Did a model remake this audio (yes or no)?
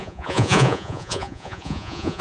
yes